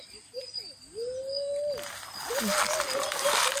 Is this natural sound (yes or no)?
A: yes